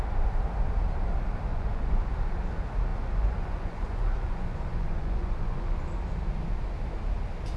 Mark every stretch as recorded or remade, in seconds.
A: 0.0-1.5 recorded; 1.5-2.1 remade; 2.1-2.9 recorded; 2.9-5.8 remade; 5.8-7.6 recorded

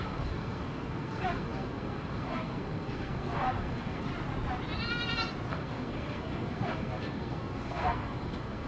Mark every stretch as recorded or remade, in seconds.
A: 0.0-4.1 remade; 4.1-5.5 recorded; 5.5-8.7 remade

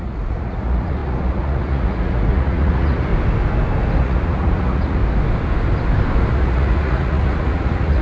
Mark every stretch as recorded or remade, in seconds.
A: 0.0-3.1 remade; 3.1-4.0 recorded; 4.0-5.0 remade; 5.0-6.3 recorded; 6.3-8.0 remade

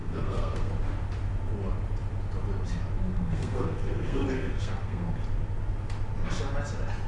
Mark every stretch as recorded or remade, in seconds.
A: 0.0-0.7 remade; 0.7-3.1 recorded; 3.1-5.1 remade; 5.1-7.1 recorded

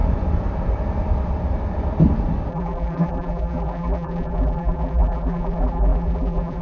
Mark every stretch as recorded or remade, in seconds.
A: 0.0-2.5 recorded; 2.5-6.6 remade

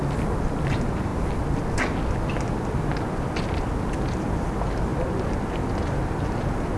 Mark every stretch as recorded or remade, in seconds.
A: 0.0-6.8 recorded

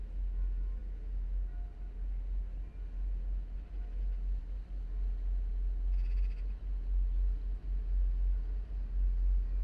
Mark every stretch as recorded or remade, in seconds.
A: 0.0-9.6 recorded